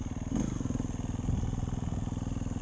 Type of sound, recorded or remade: recorded